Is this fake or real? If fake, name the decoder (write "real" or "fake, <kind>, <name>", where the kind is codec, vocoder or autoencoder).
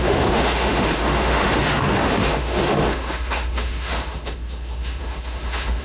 fake, autoencoder, DAC-VAE